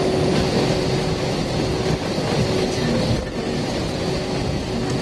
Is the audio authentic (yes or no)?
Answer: yes